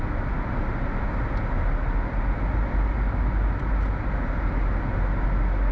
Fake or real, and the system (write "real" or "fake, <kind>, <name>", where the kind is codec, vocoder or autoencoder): real